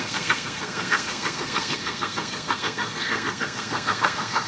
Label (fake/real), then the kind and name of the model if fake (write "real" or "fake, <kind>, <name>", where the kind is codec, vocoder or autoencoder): fake, codec, SNAC